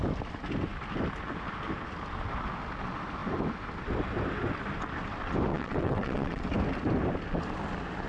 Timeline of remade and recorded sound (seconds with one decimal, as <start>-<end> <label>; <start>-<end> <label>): 0.0-5.5 recorded; 5.5-6.4 remade; 6.4-8.1 recorded